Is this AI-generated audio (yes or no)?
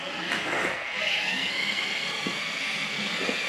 yes